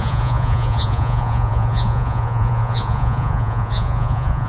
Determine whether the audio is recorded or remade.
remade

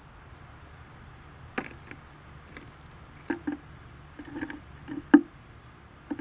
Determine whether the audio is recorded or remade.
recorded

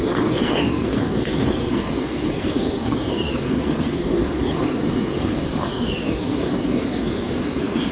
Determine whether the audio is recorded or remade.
remade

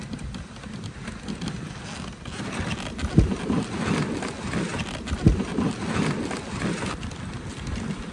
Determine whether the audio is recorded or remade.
recorded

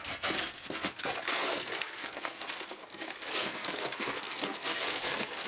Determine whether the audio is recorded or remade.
remade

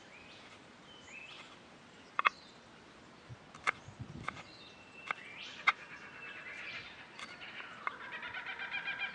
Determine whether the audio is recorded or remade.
recorded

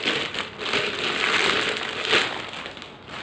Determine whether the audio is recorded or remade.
recorded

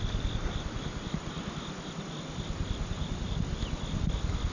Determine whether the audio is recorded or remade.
recorded